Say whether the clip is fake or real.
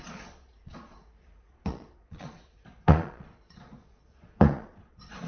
fake